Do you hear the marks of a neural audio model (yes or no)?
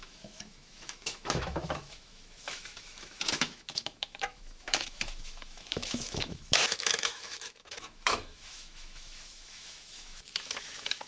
yes